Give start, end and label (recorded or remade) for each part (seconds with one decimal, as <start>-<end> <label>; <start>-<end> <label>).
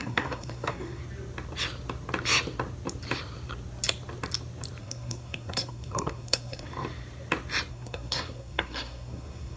0.0-1.0 remade; 1.0-4.8 recorded; 4.8-6.7 remade; 6.7-7.7 recorded; 7.7-9.6 remade